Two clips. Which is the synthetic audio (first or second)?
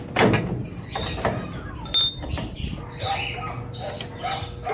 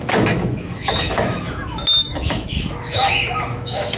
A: second